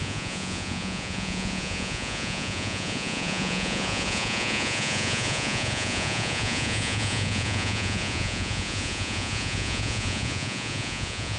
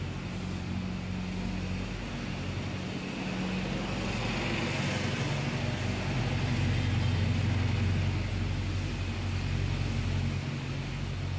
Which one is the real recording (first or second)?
second